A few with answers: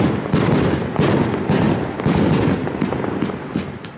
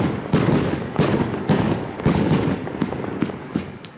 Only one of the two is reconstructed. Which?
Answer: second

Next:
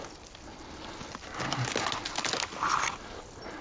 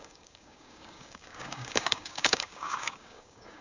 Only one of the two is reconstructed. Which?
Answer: second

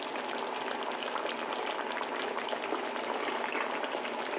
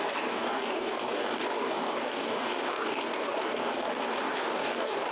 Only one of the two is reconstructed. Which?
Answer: second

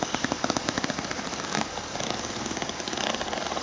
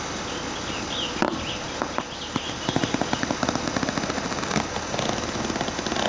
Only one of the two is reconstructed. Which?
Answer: first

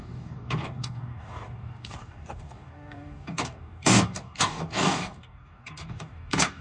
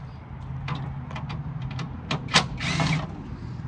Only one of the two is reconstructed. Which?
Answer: first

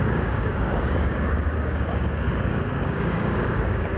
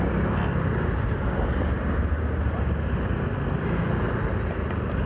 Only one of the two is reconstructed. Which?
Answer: first